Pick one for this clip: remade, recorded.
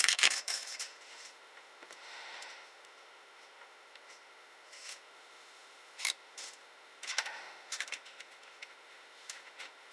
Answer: remade